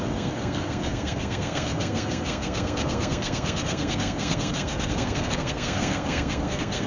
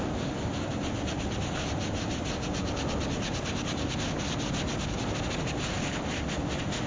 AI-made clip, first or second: first